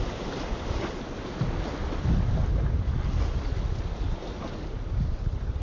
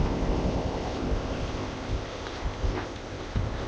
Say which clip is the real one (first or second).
first